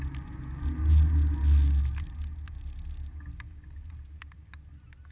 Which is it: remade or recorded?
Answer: recorded